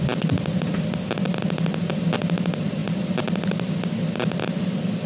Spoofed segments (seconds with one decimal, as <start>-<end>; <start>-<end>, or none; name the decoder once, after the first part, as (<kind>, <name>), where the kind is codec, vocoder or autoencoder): none